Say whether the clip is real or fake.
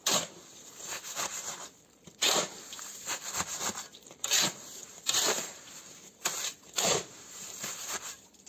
fake